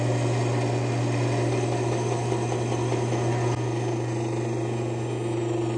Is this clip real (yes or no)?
yes